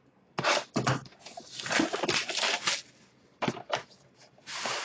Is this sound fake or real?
real